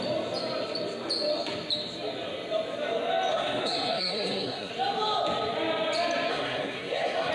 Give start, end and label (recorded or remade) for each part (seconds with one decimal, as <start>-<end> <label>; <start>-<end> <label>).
0.0-3.3 recorded; 3.3-4.7 remade; 4.7-6.3 recorded; 6.3-7.3 remade